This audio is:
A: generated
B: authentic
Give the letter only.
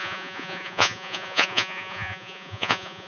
A